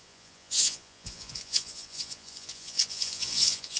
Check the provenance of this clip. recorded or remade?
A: remade